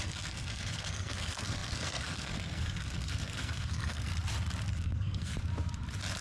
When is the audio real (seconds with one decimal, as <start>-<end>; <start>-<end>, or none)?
4.1-4.7; 5.3-6.2